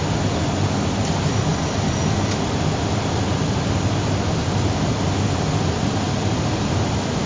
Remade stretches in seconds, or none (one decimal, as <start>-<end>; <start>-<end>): none